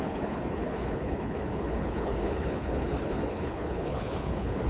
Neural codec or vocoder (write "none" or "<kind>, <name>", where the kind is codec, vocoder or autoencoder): codec, HILCodec